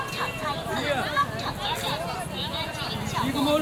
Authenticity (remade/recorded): recorded